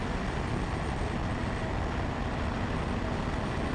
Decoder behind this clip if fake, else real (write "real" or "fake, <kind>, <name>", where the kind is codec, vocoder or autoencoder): real